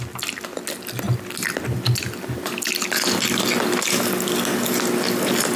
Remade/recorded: recorded